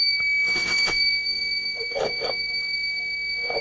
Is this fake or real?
fake